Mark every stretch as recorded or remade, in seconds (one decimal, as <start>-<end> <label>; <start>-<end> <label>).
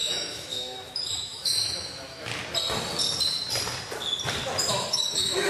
0.0-2.3 remade; 2.3-4.7 recorded; 4.7-5.5 remade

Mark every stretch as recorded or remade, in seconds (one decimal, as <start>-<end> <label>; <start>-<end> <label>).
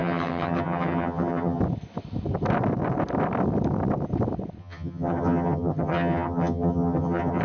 0.0-1.6 remade; 1.6-4.6 recorded; 4.6-7.4 remade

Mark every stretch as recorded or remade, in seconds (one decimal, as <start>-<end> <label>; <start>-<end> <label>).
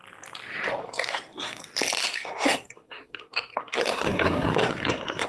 0.0-0.8 recorded; 0.8-1.6 remade; 1.6-2.0 recorded; 2.0-5.3 remade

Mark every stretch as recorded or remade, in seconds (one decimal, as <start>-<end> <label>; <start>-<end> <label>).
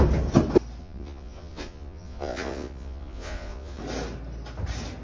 0.0-0.8 recorded; 0.8-3.8 remade; 3.8-5.0 recorded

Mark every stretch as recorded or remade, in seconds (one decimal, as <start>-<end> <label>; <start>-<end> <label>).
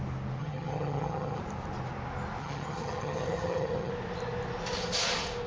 0.0-0.4 recorded; 0.4-1.4 remade; 1.4-2.4 recorded; 2.4-3.9 remade; 3.9-5.5 recorded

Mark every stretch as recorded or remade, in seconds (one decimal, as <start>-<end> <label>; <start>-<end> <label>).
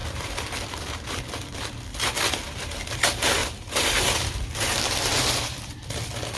0.0-3.4 remade; 3.4-4.5 recorded; 4.5-6.4 remade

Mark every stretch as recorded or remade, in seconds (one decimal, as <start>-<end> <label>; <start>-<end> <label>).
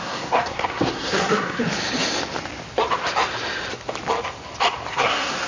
0.0-1.6 remade; 1.6-4.9 recorded; 4.9-5.5 remade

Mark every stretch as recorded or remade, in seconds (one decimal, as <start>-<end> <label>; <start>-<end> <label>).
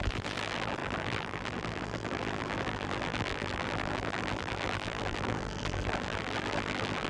0.0-7.1 remade